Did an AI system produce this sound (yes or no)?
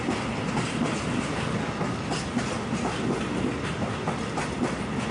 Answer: no